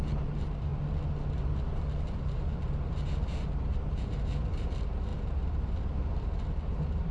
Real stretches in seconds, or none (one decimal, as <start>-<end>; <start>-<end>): 0.7-1.3